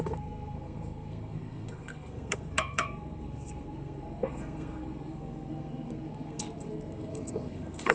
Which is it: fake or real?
fake